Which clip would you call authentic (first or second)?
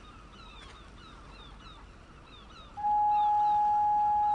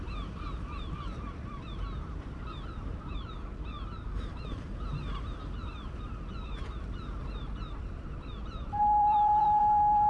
first